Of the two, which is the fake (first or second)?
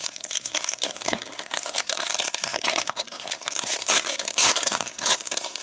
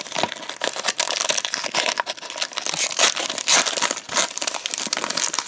first